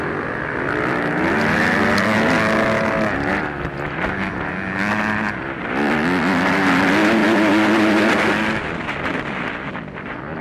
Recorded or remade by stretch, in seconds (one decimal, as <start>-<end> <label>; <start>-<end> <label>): 0.0-10.4 recorded